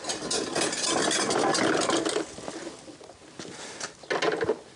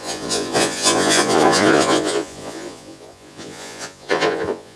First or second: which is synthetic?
second